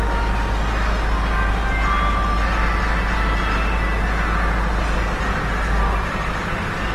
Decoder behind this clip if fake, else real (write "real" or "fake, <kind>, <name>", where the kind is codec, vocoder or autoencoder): real